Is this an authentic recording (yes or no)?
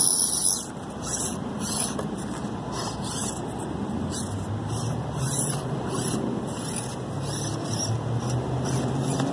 yes